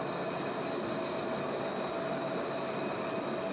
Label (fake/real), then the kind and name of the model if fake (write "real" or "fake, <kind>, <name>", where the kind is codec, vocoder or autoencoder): real